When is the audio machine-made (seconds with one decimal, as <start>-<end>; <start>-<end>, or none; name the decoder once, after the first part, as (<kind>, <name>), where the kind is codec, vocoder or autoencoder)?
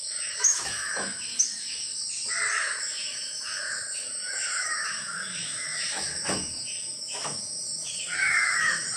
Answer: 0.0-1.9 (autoencoder, DAC-VAE); 2.5-9.0